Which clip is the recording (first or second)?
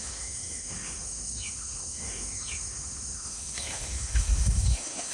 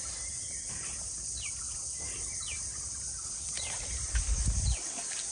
second